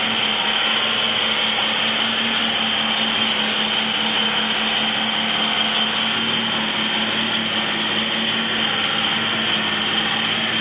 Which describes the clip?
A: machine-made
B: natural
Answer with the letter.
B